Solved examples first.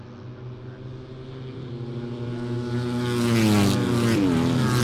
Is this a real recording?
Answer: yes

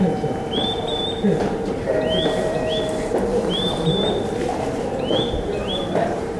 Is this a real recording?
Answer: no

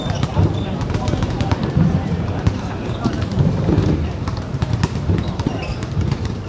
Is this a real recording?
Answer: no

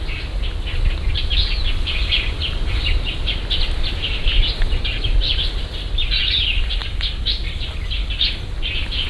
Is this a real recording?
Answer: yes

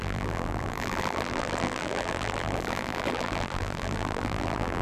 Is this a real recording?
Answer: no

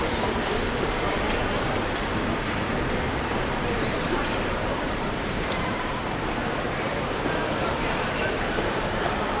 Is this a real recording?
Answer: no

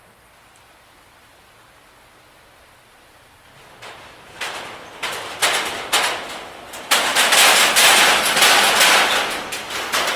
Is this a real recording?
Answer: yes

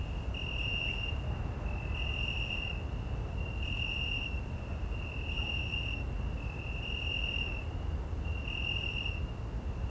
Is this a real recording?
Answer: yes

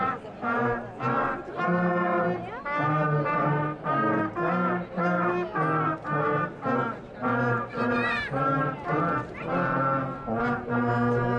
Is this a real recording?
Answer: yes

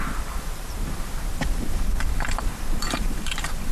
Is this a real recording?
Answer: no